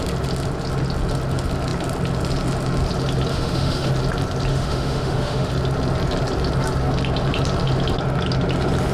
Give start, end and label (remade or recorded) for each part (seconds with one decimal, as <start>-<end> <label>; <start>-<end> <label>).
0.0-3.3 recorded; 3.3-3.9 remade; 3.9-4.5 recorded; 4.5-5.5 remade; 5.5-8.9 recorded